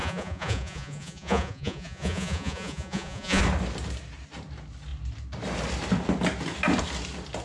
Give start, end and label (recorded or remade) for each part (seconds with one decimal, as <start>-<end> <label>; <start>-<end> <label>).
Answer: 0.0-3.4 remade; 3.4-7.4 recorded